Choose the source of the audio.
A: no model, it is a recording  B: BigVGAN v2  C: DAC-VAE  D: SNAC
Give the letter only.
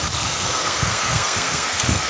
D